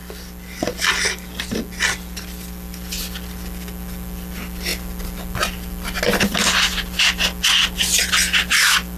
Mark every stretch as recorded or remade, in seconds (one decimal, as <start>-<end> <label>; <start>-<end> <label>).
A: 0.0-9.0 recorded